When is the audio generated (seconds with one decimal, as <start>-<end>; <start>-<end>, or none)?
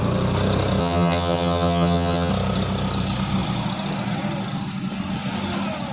0.8-2.3